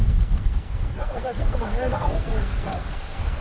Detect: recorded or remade remade